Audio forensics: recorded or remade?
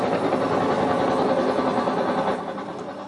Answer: recorded